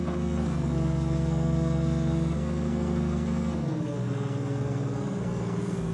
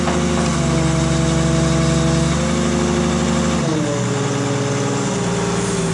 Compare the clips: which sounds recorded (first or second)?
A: second